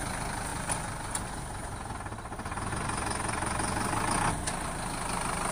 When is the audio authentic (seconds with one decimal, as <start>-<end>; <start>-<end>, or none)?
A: 0.0-5.5